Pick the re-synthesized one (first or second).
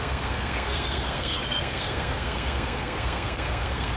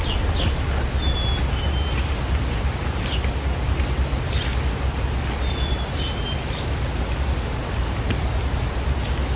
first